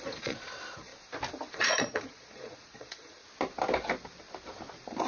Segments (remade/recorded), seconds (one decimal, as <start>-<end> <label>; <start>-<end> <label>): 0.0-0.9 remade; 0.9-1.5 recorded; 1.5-3.2 remade; 3.2-5.1 recorded